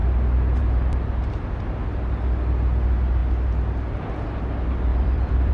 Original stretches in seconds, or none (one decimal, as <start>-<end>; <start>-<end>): 0.0-4.9